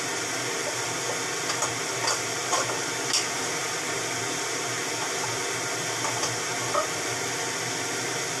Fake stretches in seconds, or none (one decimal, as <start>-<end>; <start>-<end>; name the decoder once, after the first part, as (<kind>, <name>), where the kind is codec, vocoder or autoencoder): none

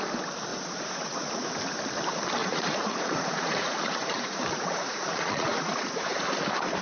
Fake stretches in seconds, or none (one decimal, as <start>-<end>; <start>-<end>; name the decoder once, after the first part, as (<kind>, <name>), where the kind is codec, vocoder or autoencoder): 0.5-1.5 (vocoder, Vocos); 2.4-6.2

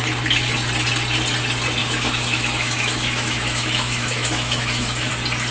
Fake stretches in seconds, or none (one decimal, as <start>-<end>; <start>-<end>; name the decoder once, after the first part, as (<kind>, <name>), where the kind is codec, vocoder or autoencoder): 1.8-5.1 (autoencoder, DAC-VAE)

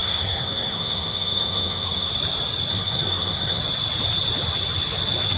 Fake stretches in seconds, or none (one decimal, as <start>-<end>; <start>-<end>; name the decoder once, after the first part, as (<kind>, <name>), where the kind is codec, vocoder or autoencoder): 0.0-2.1 (codec, SNAC); 2.7-3.6

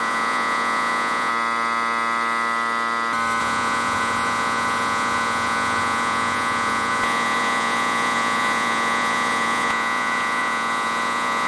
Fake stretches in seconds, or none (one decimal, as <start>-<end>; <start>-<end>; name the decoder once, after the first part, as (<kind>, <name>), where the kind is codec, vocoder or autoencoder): 0.0-1.3 (vocoder, Vocos); 3.4-11.5

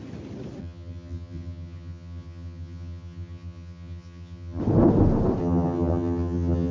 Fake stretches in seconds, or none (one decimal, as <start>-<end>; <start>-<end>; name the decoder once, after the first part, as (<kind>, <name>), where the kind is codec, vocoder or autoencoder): 0.6-4.6 (vocoder, HiFi-GAN); 5.4-6.7

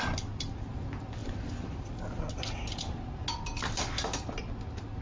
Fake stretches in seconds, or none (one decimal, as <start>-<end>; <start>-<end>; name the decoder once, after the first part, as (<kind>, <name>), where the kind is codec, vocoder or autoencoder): 1.2-1.9 (vocoder, BigVGAN v2)